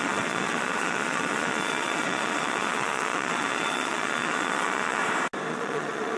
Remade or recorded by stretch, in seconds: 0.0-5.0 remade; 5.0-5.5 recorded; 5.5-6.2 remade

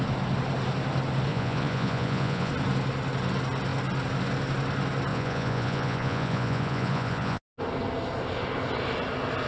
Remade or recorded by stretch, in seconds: 0.0-1.3 recorded; 1.3-2.5 remade; 2.5-5.1 recorded; 5.1-7.4 remade; 7.4-9.5 recorded

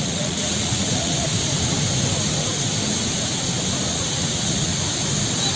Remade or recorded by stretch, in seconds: 0.0-1.3 remade; 1.3-3.9 recorded; 3.9-4.7 remade; 4.7-5.6 recorded